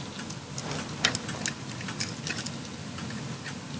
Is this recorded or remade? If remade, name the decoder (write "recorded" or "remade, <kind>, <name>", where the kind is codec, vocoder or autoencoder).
recorded